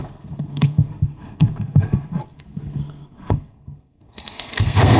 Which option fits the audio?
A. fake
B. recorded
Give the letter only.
A